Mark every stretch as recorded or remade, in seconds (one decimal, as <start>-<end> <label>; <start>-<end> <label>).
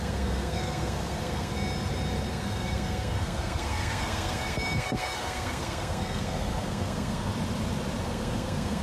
0.0-1.5 remade; 1.5-2.3 recorded; 2.3-7.3 remade; 7.3-8.0 recorded; 8.0-8.8 remade